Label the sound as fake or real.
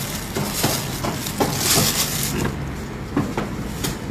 real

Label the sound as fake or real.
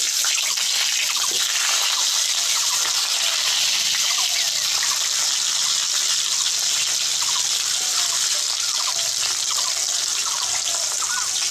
real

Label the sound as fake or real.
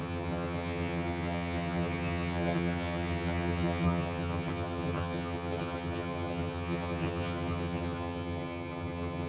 fake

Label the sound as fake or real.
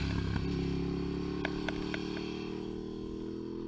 real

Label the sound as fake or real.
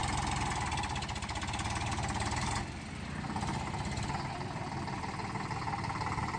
real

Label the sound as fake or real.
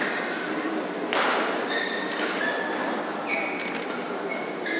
real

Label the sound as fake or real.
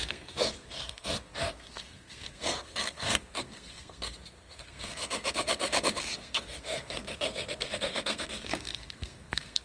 fake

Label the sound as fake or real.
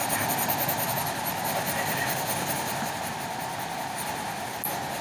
real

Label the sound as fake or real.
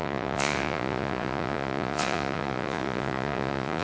fake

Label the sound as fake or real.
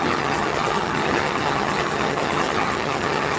fake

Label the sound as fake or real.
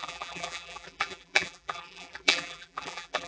fake